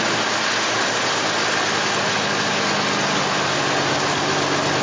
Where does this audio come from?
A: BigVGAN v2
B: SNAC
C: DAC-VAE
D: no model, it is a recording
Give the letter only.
D